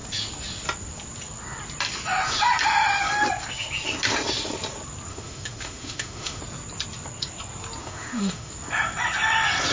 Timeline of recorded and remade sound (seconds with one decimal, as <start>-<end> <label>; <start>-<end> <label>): 0.0-5.1 recorded; 5.1-6.4 remade; 6.4-7.8 recorded; 7.8-8.5 remade; 8.5-9.7 recorded